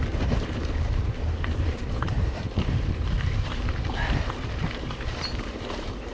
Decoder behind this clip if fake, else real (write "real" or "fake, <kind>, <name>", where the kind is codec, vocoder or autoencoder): fake, vocoder, BigVGAN v2